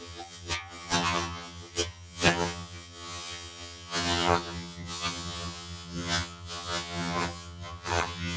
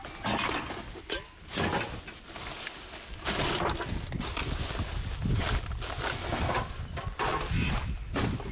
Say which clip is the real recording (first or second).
second